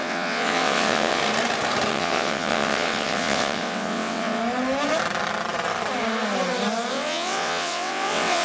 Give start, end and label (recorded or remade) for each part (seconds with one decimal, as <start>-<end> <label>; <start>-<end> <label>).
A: 0.0-1.2 remade; 1.2-1.9 recorded; 1.9-4.4 remade; 4.4-6.9 recorded; 6.9-8.4 remade